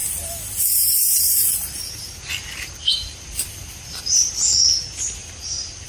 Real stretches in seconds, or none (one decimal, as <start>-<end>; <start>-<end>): 0.0-5.2